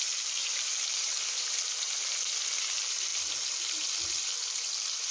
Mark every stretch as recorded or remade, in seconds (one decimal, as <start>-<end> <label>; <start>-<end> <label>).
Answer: 0.0-0.4 recorded; 0.4-1.8 remade; 1.8-5.1 recorded